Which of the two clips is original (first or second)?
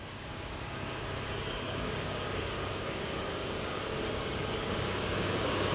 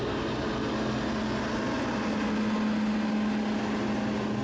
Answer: second